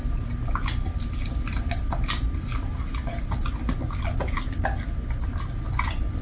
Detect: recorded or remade recorded